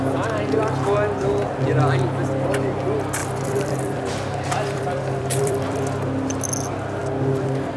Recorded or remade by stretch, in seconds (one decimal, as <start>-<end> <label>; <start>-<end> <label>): 0.0-3.2 recorded; 3.2-5.8 remade; 5.8-7.8 recorded